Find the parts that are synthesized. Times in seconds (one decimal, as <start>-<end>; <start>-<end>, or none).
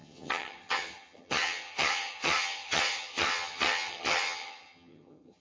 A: 0.0-5.4